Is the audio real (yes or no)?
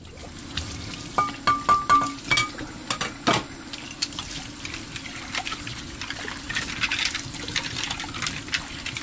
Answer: yes